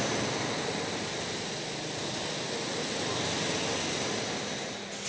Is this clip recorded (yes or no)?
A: yes